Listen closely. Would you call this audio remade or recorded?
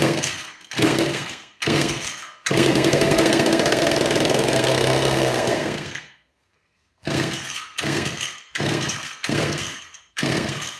remade